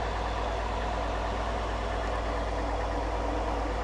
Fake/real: real